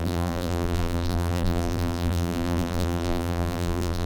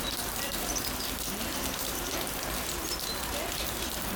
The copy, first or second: first